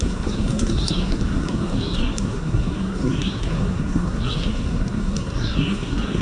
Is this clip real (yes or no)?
no